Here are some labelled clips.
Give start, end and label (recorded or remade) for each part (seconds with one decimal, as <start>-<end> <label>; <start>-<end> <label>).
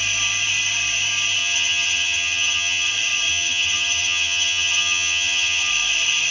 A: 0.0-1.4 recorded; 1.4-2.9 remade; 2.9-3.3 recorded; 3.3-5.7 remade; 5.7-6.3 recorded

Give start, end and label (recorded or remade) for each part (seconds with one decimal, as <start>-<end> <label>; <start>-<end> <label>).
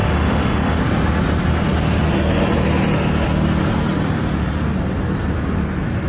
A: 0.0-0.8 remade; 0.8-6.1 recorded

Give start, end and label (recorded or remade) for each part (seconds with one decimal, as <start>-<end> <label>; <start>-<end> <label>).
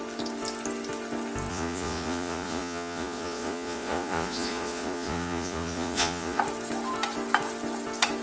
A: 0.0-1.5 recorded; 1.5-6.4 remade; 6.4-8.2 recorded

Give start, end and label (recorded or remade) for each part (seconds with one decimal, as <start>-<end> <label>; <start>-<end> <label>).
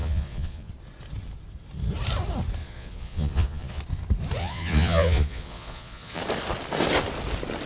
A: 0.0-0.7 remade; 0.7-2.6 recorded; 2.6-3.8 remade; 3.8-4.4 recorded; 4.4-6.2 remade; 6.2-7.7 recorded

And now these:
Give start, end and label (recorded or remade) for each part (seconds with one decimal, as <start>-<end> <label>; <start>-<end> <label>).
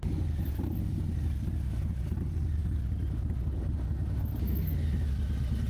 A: 0.0-5.7 recorded